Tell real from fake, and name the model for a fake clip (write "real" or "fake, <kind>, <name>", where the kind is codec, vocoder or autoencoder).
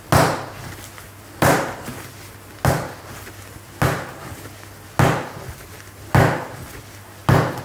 real